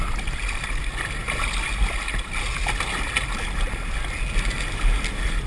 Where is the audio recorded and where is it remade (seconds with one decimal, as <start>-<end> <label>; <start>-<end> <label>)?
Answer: 0.0-5.5 recorded